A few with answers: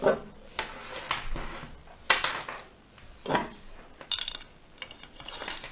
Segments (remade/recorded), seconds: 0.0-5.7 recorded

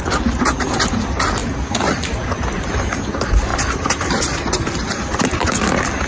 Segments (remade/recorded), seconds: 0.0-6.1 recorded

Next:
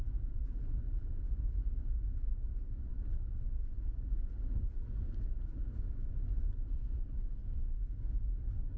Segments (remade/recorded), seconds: 0.0-2.9 remade; 2.9-6.3 recorded; 6.3-7.4 remade; 7.4-8.8 recorded

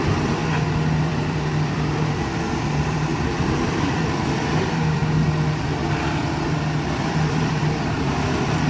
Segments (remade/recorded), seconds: 0.0-0.4 remade; 0.4-1.0 recorded; 1.0-5.0 remade; 5.0-7.6 recorded; 7.6-8.7 remade

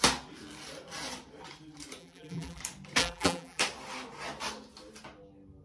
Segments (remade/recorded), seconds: 0.0-2.0 recorded; 2.0-2.6 remade; 2.6-3.0 recorded; 3.0-3.6 remade; 3.6-5.6 recorded